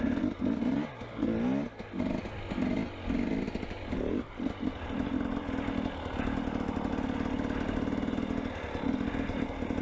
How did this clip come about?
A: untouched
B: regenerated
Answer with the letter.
A